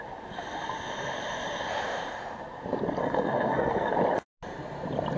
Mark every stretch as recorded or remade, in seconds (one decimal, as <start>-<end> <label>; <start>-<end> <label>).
0.0-3.0 recorded; 3.0-3.9 remade; 3.9-5.2 recorded